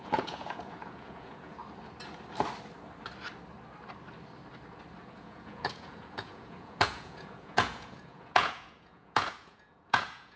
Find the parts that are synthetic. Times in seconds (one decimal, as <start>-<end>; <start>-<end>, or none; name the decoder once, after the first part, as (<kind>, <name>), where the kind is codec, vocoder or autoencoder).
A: 0.0-1.6 (vocoder, Vocos); 5.0-10.4